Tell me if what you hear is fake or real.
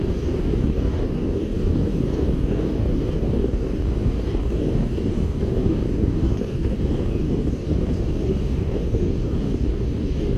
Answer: fake